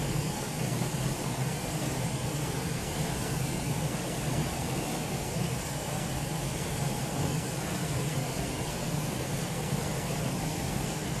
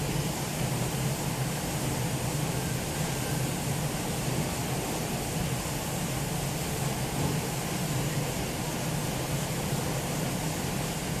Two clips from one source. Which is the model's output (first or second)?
first